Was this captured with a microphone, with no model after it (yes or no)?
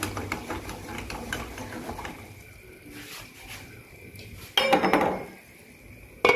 yes